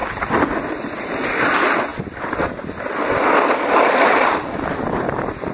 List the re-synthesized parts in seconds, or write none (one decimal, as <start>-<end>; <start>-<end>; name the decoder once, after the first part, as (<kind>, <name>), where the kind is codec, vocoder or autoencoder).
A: none